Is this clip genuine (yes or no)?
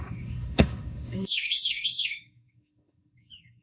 no